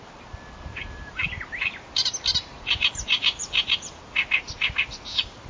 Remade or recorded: recorded